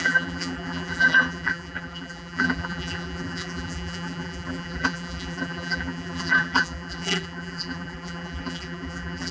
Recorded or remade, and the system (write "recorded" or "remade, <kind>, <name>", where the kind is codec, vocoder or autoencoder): remade, vocoder, BigVGAN v2